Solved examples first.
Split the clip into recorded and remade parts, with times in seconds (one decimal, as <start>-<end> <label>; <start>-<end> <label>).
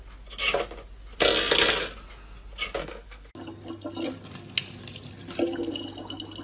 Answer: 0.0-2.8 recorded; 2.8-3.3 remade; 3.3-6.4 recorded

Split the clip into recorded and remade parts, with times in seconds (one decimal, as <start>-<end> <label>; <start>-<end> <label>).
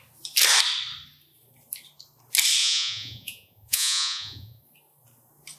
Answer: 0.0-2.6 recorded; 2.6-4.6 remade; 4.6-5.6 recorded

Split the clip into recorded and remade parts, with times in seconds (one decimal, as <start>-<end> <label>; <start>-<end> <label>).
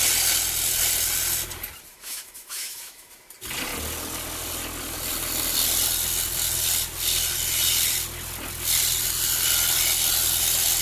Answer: 0.0-1.9 recorded; 1.9-3.1 remade; 3.1-10.8 recorded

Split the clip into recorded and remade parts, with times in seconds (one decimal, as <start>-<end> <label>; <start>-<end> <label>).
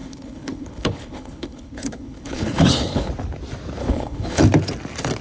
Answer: 0.0-3.1 remade; 3.1-3.8 recorded; 3.8-4.4 remade; 4.4-5.2 recorded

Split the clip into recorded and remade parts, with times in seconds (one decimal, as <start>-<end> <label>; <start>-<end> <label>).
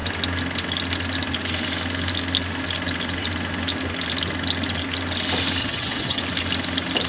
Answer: 0.0-5.6 recorded; 5.6-6.2 remade; 6.2-7.1 recorded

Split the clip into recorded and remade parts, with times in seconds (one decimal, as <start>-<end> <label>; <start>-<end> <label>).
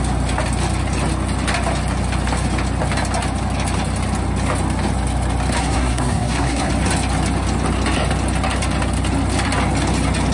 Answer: 0.0-5.6 recorded; 5.6-6.7 remade; 6.7-10.3 recorded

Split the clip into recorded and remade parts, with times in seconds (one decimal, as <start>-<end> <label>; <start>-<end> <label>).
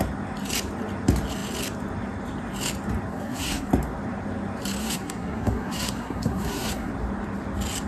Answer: 0.0-3.1 recorded; 3.1-3.7 remade; 3.7-4.8 recorded; 4.8-6.9 remade; 6.9-7.9 recorded